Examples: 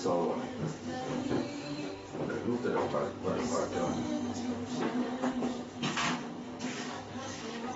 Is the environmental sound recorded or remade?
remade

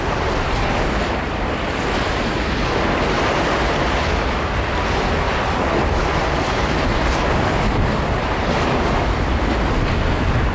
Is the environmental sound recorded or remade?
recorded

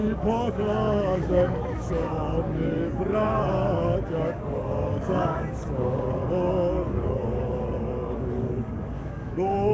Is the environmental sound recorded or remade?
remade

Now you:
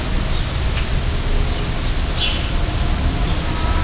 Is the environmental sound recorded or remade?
recorded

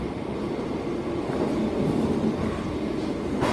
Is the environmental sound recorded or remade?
recorded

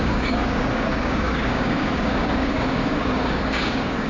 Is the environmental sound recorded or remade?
remade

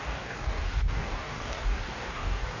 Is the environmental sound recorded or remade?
remade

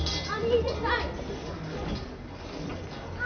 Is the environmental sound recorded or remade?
recorded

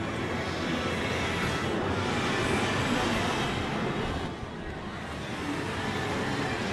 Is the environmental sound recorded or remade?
recorded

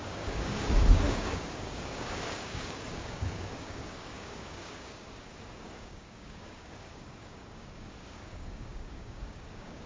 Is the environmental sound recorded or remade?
remade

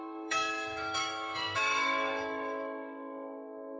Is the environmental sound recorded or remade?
remade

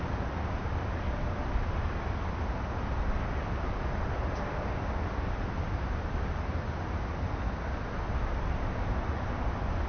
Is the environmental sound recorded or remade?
recorded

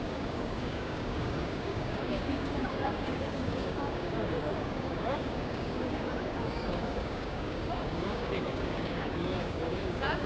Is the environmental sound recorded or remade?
remade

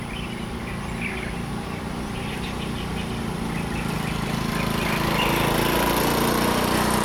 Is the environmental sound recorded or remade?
recorded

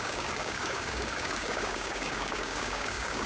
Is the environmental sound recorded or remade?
remade